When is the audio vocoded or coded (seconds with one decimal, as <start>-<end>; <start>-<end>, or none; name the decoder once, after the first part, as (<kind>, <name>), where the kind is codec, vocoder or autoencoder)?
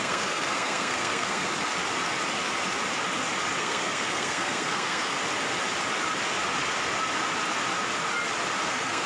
0.0-1.5 (codec, SNAC); 3.6-5.2; 8.7-9.1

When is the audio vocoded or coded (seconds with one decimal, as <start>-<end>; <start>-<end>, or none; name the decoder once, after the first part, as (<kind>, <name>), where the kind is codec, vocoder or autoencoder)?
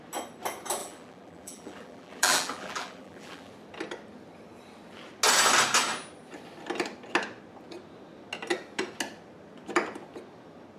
0.8-3.5 (vocoder, BigVGAN v2)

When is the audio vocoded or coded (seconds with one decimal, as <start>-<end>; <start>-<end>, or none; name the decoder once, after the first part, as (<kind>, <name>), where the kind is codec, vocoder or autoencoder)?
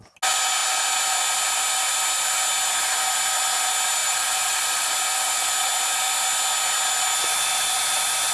4.0-4.9 (vocoder, BigVGAN v2)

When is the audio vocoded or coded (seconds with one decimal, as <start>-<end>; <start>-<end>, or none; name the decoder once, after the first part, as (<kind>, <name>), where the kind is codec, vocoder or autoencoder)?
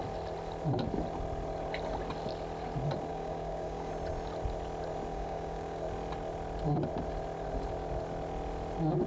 3.1-3.9 (codec, DAC); 5.1-5.8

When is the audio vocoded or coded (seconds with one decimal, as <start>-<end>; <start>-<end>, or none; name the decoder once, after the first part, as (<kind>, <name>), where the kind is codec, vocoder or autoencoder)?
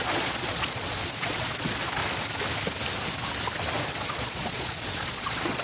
0.0-2.0 (vocoder, Vocos); 3.9-5.6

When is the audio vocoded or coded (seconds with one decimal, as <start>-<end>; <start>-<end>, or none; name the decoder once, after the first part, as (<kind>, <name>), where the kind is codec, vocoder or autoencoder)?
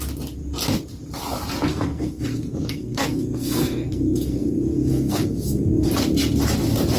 1.7-5.9 (codec, SNAC)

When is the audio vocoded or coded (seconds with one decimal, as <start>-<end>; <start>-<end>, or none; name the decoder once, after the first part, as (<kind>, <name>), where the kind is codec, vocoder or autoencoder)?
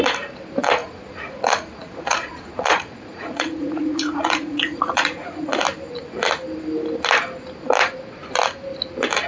0.8-5.6 (vocoder, Vocos)